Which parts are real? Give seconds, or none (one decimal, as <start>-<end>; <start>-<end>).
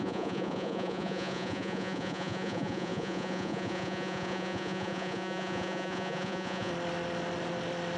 6.7-8.0